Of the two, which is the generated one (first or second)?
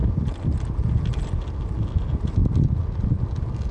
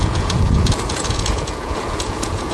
second